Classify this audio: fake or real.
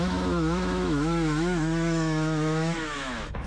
fake